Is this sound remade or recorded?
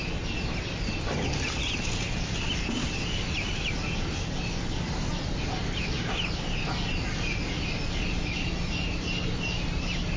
recorded